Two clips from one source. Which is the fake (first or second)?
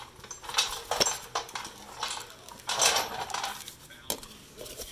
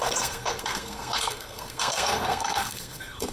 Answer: second